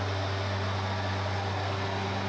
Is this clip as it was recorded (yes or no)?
yes